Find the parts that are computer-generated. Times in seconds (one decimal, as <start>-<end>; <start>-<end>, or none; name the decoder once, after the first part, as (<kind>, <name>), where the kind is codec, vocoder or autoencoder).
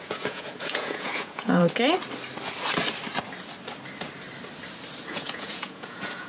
0.0-1.6 (vocoder, Vocos); 5.1-6.3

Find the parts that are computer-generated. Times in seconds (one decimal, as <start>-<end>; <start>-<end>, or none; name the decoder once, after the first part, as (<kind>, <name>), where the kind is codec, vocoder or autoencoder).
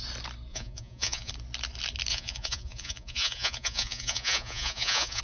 0.5-1.3 (vocoder, Vocos); 2.1-5.2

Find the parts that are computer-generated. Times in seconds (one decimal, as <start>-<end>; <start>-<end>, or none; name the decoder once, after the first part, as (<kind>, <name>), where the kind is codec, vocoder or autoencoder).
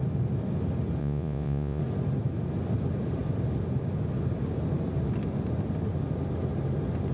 1.0-1.8 (vocoder, Vocos)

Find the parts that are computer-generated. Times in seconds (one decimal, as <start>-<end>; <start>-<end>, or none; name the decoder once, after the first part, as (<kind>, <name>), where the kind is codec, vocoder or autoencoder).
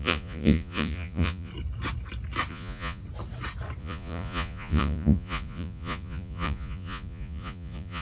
0.0-1.5 (vocoder, Vocos); 2.5-3.0; 3.8-8.0